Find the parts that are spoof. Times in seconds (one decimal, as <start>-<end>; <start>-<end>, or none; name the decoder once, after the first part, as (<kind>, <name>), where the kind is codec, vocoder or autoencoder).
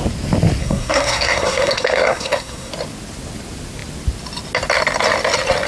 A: 0.6-2.7 (codec, SNAC)